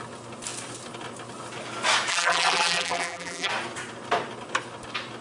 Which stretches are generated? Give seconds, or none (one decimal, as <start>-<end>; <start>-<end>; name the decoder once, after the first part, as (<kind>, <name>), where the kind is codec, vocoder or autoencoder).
2.1-3.5 (vocoder, BigVGAN v2)